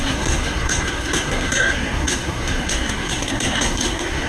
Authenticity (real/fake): fake